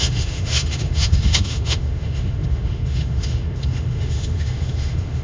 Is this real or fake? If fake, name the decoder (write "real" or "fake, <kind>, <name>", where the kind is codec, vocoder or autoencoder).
fake, autoencoder, DAC-VAE